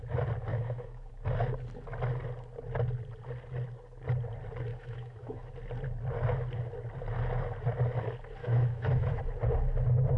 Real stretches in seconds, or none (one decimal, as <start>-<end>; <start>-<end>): 0.0-0.5; 1.1-4.7; 5.5-8.4; 9.2-10.2